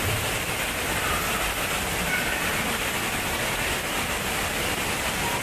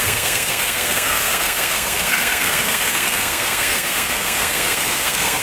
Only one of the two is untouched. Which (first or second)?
first